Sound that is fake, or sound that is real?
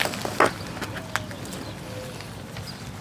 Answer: real